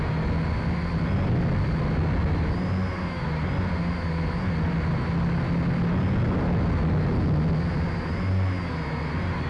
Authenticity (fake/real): real